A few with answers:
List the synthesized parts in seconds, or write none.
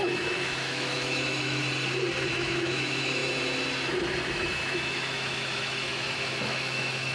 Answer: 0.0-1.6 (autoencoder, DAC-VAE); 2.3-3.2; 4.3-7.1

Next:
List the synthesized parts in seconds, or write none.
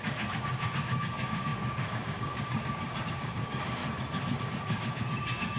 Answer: 0.0-3.8 (codec, DAC); 4.4-5.6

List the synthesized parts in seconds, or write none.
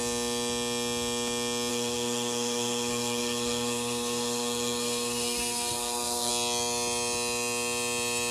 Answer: 1.7-6.3 (codec, SNAC)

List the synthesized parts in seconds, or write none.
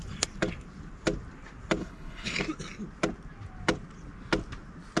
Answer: 1.8-2.4 (codec, HILCodec)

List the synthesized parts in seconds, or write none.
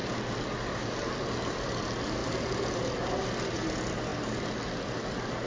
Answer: none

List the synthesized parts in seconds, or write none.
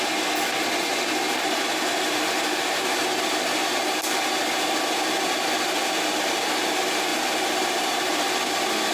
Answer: none